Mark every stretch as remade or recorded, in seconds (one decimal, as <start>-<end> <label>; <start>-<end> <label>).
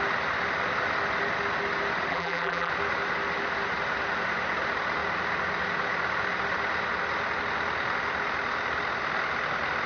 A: 0.0-2.1 recorded; 2.1-2.7 remade; 2.7-9.9 recorded